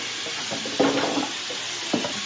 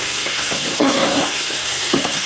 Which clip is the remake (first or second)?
second